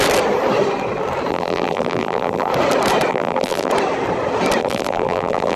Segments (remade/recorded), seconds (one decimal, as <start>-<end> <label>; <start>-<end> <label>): 0.0-1.3 recorded; 1.3-2.5 remade; 2.5-3.1 recorded; 3.1-3.7 remade; 3.7-4.6 recorded; 4.6-5.6 remade